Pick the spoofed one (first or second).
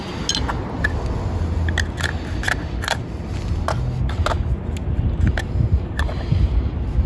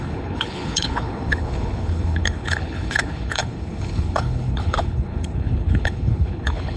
second